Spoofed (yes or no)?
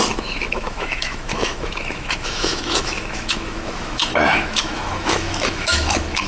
yes